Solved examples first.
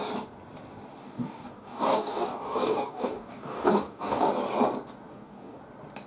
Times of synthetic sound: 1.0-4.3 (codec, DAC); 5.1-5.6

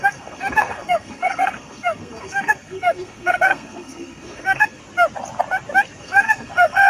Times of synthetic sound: 0.0-4.8 (codec, SNAC); 6.0-6.9

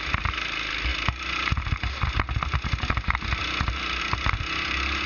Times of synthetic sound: none

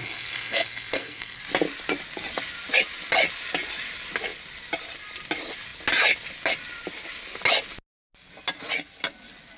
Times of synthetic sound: 0.0-1.4 (codec, SNAC)

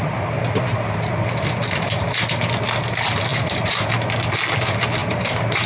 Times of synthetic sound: 0.4-1.0 (vocoder, BigVGAN v2); 3.3-3.9; 5.0-5.7

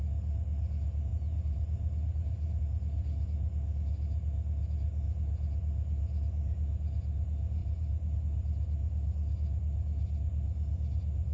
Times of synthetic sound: 1.1-2.6 (vocoder, BigVGAN v2); 7.6-8.2

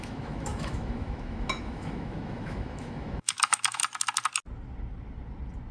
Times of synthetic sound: 0.0-3.8 (autoencoder, DAC-VAE)

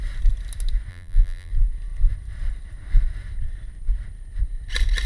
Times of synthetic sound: 0.9-1.5 (vocoder, BigVGAN v2)